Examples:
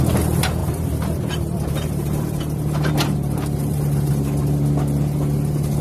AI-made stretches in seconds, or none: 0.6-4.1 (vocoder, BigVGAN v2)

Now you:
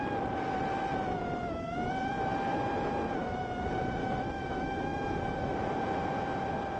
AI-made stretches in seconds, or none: 4.0-5.8 (autoencoder, DAC-VAE)

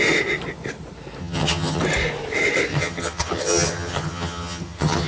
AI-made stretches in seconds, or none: 1.2-1.8 (vocoder, HiFi-GAN); 2.7-5.1

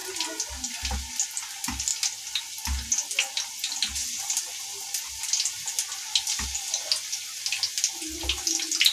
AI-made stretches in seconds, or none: none

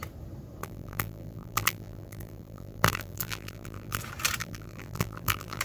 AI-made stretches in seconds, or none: 0.6-4.0 (vocoder, BigVGAN v2); 4.4-5.6

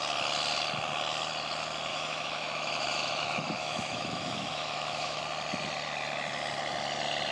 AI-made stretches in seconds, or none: 1.9-5.2 (autoencoder, DAC-VAE)